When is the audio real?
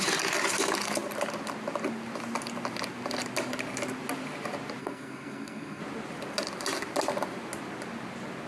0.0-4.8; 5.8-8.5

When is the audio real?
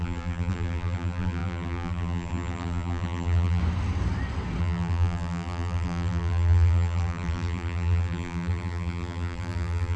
3.6-4.6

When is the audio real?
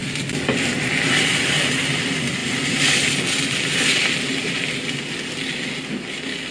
0.0-6.5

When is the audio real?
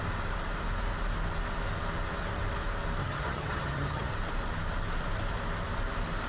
0.0-3.0; 4.1-6.3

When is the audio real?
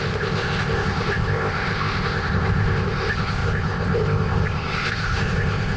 none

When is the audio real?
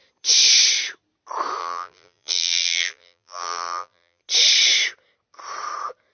0.0-1.6; 4.2-6.1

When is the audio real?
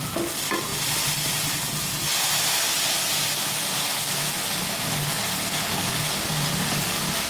0.0-3.8; 4.3-5.0; 6.3-7.3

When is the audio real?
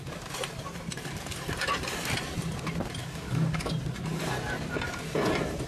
0.0-3.0; 3.7-5.7